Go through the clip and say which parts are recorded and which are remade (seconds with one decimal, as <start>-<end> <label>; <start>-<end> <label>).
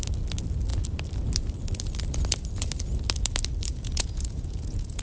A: 0.0-3.7 recorded; 3.7-5.0 remade